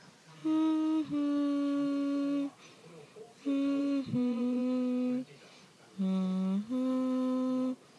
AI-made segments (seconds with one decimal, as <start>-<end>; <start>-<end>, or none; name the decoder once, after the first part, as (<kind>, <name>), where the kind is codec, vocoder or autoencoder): 0.0-0.4 (vocoder, Vocos); 3.8-4.6